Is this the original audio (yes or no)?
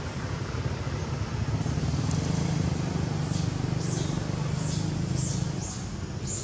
yes